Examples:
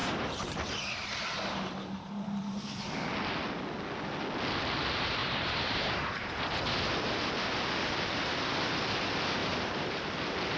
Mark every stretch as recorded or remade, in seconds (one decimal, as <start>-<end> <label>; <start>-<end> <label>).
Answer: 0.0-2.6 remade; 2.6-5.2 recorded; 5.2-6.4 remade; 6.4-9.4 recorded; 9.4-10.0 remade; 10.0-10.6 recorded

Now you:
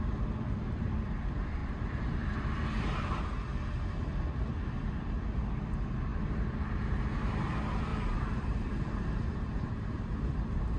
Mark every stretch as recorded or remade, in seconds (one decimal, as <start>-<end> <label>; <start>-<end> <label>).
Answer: 0.0-1.6 recorded; 1.6-3.2 remade; 3.2-7.9 recorded; 7.9-10.0 remade; 10.0-10.8 recorded

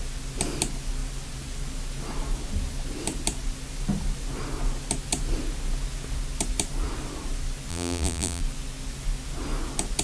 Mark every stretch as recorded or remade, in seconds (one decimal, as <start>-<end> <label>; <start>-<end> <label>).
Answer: 0.0-7.7 recorded; 7.7-8.4 remade; 8.4-10.0 recorded

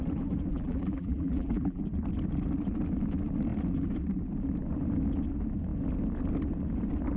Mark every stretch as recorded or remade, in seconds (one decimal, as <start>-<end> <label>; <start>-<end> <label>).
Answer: 0.0-0.5 recorded; 0.5-1.8 remade; 1.8-7.2 recorded

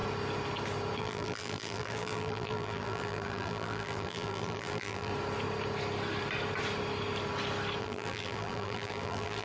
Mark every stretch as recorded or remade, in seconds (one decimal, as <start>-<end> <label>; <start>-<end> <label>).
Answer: 0.0-1.0 recorded; 1.0-5.1 remade; 5.1-7.8 recorded; 7.8-9.4 remade

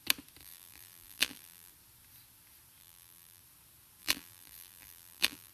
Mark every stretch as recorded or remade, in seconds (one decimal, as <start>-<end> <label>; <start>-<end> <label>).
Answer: 0.0-0.4 recorded; 0.4-1.7 remade; 1.7-2.8 recorded; 2.8-3.4 remade; 3.4-4.0 recorded; 4.0-5.5 remade

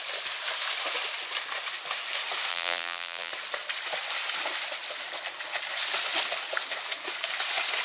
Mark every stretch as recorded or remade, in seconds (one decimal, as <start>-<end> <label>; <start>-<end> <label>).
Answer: 0.0-2.5 recorded; 2.5-3.3 remade; 3.3-7.8 recorded

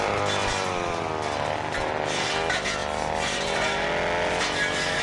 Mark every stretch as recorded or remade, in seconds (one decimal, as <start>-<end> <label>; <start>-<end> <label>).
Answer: 0.0-0.4 recorded; 0.4-2.3 remade; 2.3-5.0 recorded